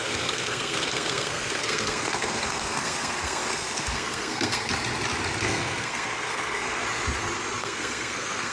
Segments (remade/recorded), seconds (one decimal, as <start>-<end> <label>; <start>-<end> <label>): 0.0-4.7 remade; 4.7-5.4 recorded; 5.4-6.8 remade; 6.8-7.6 recorded; 7.6-8.5 remade